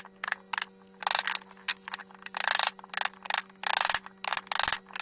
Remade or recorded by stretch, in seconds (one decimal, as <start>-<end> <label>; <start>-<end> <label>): 0.0-2.0 recorded; 2.0-2.9 remade; 2.9-5.0 recorded